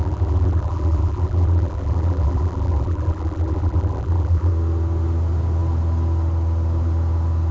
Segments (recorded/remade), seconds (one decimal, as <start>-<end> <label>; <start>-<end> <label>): 0.0-4.5 remade; 4.5-7.5 recorded